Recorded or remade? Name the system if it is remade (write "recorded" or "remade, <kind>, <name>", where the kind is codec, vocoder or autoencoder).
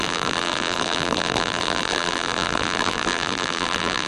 remade, vocoder, BigVGAN v2